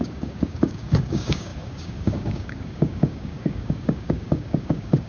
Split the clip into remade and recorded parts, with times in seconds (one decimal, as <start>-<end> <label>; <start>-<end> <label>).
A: 0.0-5.1 remade